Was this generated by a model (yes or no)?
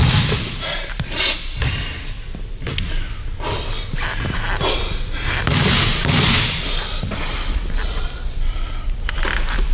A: no